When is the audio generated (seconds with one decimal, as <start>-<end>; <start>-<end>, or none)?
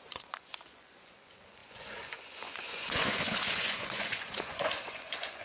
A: 0.0-5.4